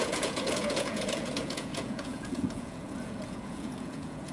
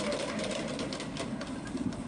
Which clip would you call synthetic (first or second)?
first